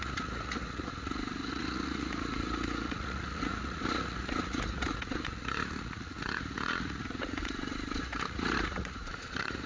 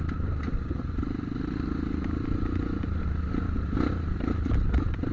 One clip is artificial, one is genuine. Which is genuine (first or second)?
second